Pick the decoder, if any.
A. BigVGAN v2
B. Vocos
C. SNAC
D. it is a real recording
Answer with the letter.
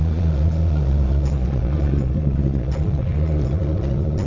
B